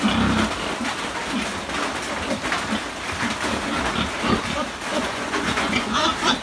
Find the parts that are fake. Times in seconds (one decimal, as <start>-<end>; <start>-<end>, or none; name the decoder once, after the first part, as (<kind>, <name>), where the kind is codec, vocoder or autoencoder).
4.9-6.0 (vocoder, Vocos)